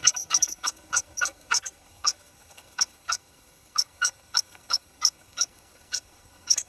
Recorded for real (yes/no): no